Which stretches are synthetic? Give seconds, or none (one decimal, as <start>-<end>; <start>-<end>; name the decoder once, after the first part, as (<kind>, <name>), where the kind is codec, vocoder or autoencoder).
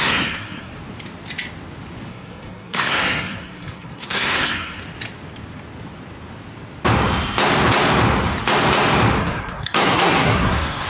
0.0-0.7 (codec, SNAC); 2.1-4.8; 9.2-10.9